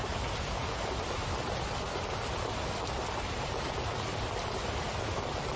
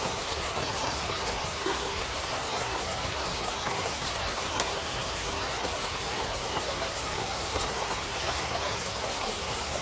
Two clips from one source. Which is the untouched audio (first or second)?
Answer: first